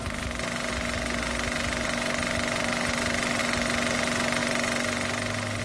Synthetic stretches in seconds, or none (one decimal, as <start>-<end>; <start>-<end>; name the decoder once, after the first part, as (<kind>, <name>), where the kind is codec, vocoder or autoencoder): none